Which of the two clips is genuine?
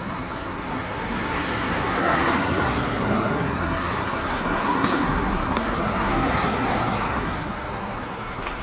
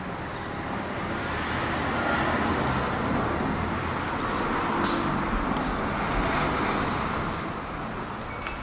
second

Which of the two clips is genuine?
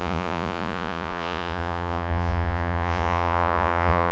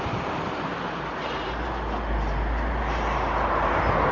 second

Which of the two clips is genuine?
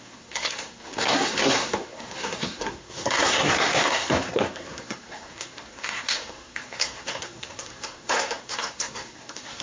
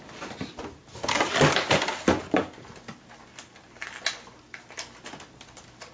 second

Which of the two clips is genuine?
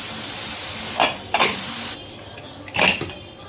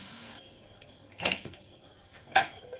first